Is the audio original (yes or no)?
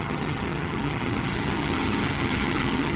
no